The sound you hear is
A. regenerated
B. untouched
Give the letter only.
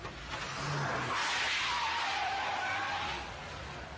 B